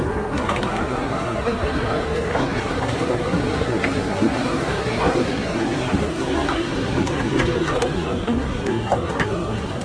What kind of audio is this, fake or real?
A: fake